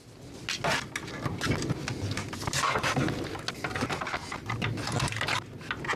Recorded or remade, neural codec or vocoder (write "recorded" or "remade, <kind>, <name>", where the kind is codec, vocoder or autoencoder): recorded